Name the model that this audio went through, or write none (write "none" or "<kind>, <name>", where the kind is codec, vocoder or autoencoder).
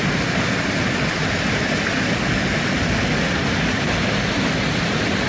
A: none